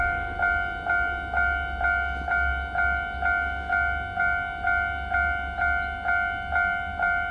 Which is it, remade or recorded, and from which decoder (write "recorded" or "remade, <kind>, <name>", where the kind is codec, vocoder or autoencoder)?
recorded